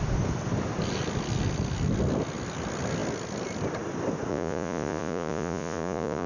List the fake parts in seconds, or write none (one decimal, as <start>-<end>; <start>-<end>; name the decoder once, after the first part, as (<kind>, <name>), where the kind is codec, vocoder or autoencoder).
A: 4.3-6.3 (vocoder, Vocos)